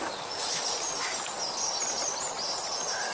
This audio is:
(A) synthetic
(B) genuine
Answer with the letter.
B